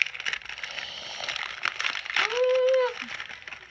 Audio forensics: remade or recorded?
recorded